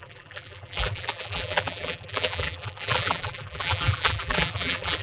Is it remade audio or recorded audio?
remade